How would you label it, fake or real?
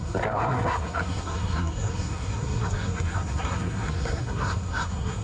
fake